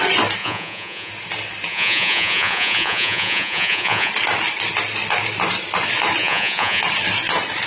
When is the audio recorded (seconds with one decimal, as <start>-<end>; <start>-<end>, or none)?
0.0-0.4; 1.1-1.7; 4.1-6.2; 6.8-7.7